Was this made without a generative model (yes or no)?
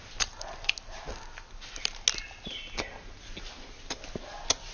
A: yes